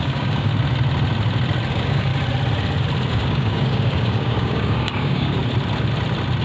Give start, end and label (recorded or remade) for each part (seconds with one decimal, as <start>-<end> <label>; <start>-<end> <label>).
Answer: 0.0-0.5 remade; 0.5-1.7 recorded; 1.7-2.1 remade; 2.1-3.1 recorded; 3.1-5.4 remade; 5.4-6.4 recorded